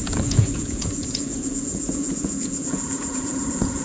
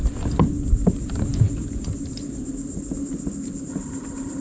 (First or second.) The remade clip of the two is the first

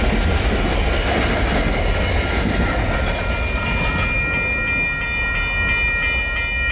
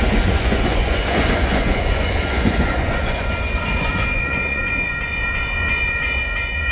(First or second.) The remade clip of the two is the second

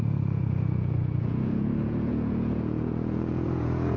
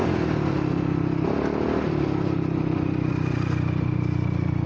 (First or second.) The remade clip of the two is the first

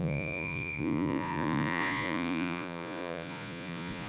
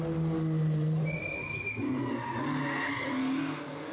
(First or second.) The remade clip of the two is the first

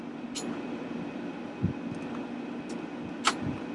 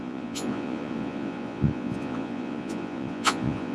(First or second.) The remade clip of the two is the second